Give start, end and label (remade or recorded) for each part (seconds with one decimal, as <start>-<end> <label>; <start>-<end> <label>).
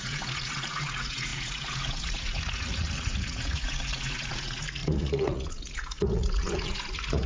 0.0-7.3 remade